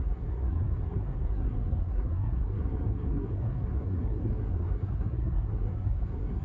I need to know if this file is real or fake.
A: fake